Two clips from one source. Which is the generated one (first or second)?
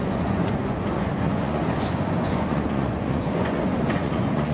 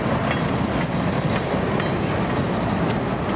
first